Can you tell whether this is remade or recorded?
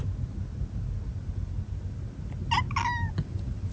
recorded